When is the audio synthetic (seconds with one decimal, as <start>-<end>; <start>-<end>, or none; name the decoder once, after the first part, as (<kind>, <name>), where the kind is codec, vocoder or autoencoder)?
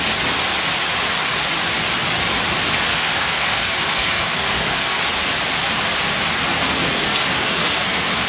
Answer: 2.9-5.0 (codec, SNAC); 6.5-8.3